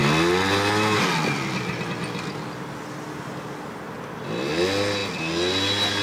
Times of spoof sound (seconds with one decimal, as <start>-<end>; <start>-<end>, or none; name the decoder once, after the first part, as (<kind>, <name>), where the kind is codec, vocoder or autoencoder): none